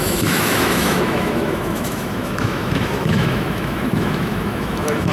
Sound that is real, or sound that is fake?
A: fake